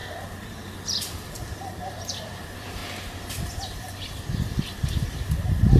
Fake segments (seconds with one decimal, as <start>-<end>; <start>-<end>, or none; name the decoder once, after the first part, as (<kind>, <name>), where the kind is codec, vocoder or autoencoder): 0.0-2.8 (vocoder, BigVGAN v2); 3.3-5.8

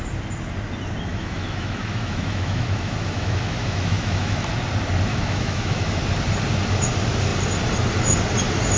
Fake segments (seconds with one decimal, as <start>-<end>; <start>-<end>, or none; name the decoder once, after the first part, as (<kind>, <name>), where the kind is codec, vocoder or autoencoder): 1.1-4.5 (autoencoder, DAC-VAE); 5.1-6.0

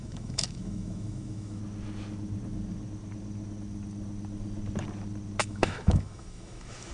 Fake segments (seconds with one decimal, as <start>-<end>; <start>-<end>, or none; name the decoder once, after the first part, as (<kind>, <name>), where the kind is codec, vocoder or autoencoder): 0.0-1.6 (autoencoder, DAC-VAE); 5.4-6.9

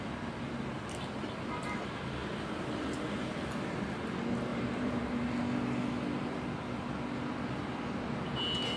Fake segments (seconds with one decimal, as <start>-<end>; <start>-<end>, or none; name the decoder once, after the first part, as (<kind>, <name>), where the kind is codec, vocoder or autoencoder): 4.5-5.4 (vocoder, BigVGAN v2)

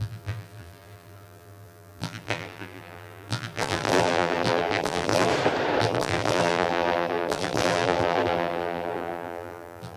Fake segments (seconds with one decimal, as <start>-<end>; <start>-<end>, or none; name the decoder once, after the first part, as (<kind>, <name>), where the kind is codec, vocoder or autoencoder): 0.0-5.3 (vocoder, BigVGAN v2); 5.8-10.0

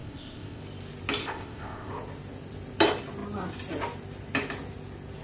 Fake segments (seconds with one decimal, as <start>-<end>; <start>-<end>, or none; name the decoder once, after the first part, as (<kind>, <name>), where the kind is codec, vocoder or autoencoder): 0.0-0.6 (codec, ZipCodec); 1.2-1.9

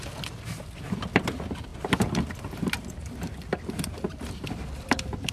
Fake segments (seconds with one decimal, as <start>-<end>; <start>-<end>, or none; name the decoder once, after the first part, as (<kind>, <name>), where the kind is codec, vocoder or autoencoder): 0.0-5.3 (vocoder, BigVGAN v2)

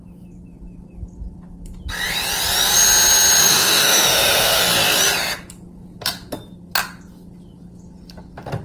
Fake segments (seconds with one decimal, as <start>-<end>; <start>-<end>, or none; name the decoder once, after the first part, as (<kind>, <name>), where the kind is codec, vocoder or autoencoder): 3.4-4.6 (autoencoder, DAC-VAE)